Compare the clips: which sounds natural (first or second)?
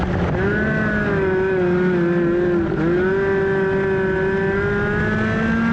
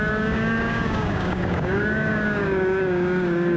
first